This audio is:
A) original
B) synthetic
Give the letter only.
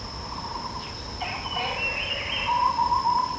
A